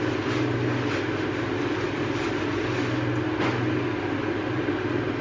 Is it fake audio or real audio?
real